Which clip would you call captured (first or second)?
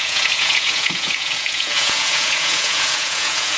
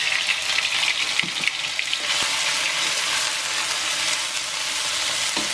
second